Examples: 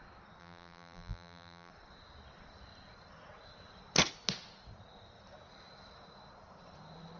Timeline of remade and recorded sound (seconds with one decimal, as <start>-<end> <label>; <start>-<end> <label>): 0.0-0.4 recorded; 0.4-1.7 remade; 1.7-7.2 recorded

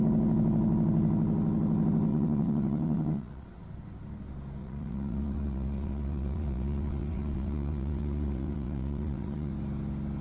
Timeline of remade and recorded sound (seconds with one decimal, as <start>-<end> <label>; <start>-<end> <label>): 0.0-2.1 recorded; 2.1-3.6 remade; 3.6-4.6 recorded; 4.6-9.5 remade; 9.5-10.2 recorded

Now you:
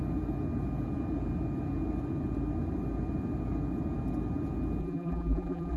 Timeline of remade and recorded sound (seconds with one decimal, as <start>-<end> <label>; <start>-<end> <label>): 0.0-4.8 recorded; 4.8-5.8 remade